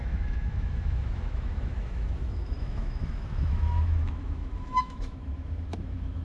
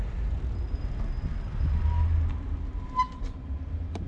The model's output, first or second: first